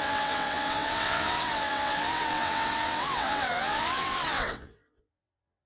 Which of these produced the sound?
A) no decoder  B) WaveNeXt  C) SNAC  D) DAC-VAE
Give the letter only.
B